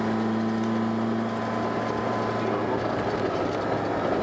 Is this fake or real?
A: real